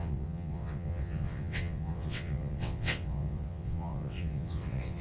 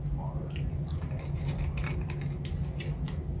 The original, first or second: second